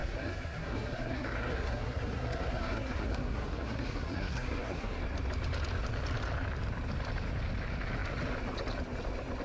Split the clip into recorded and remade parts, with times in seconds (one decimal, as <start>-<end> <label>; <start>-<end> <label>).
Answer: 0.0-5.0 remade; 5.0-9.4 recorded